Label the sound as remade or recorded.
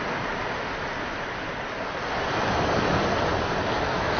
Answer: recorded